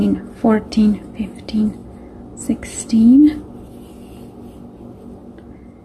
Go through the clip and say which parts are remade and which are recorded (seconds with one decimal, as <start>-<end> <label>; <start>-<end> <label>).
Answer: 0.0-5.8 recorded